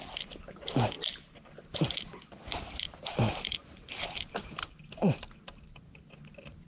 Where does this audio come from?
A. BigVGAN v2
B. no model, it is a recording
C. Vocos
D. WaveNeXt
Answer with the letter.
B